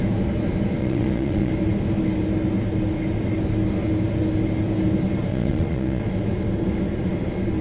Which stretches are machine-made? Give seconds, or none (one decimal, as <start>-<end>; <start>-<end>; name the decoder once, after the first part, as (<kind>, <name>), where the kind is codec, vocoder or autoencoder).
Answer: 0.8-1.5 (vocoder, Vocos); 5.3-6.0